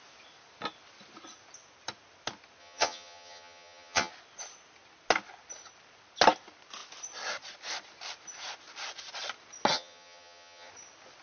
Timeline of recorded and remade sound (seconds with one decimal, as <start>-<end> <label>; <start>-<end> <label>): 0.0-2.6 recorded; 2.6-4.1 remade; 4.1-9.7 recorded; 9.7-10.7 remade; 10.7-11.2 recorded